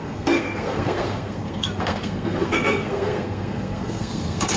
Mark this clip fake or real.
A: fake